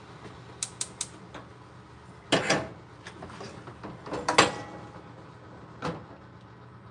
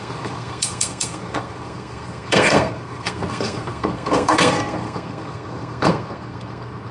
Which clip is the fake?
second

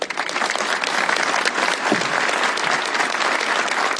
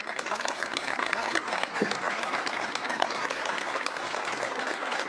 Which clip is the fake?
second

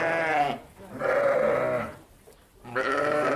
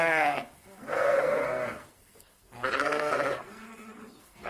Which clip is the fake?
second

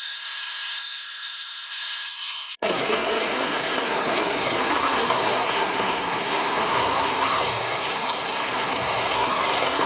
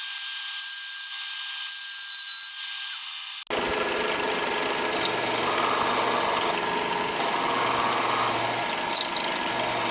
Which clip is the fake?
first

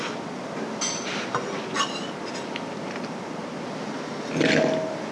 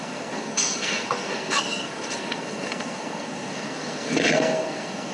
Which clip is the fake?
second